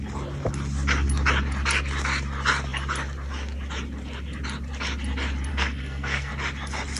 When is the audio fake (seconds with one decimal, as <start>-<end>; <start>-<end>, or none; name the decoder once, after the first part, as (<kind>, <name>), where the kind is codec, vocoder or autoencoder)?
5.5-6.3 (codec, SNAC)